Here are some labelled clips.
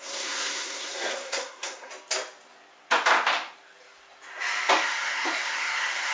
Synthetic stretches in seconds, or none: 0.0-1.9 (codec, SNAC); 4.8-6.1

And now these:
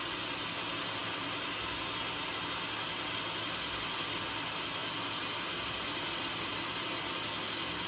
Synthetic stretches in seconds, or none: none

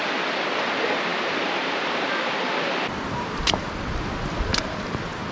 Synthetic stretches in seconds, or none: 0.0-5.3 (vocoder, BigVGAN v2)

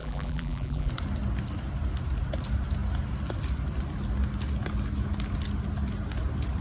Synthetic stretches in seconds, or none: 0.0-0.9 (vocoder, BigVGAN v2)